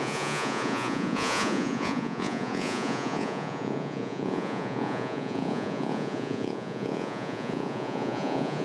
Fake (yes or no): yes